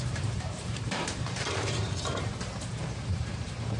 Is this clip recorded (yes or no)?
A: no